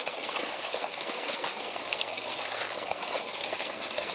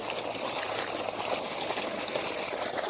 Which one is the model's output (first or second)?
first